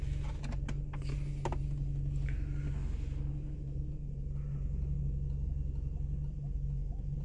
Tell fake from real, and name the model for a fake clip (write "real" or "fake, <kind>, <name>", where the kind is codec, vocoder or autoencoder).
real